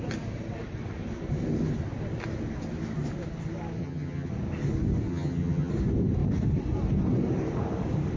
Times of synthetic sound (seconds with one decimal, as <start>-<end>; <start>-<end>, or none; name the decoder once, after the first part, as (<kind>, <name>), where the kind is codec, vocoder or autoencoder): 3.8-4.3 (vocoder, HiFi-GAN); 5.1-5.7